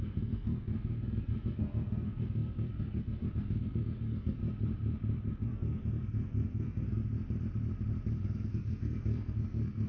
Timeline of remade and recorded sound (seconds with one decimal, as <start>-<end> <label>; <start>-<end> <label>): 0.0-4.4 remade; 4.4-5.3 recorded; 5.3-7.0 remade; 7.0-8.2 recorded; 8.2-9.9 remade